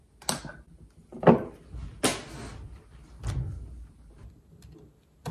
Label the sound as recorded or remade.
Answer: recorded